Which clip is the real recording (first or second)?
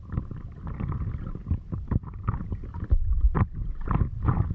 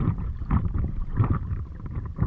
first